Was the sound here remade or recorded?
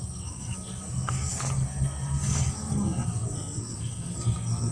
remade